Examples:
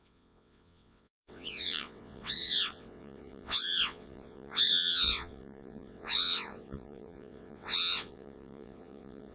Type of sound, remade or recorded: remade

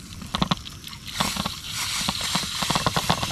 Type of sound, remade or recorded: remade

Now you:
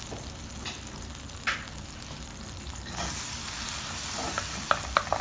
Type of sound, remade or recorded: recorded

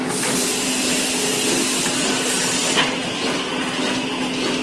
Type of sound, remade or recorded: recorded